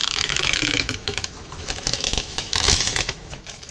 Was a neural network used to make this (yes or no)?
yes